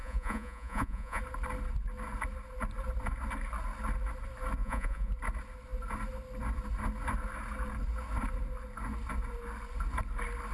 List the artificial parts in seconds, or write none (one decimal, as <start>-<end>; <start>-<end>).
0.0-1.2; 4.6-5.1